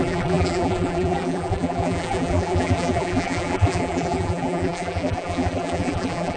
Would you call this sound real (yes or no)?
no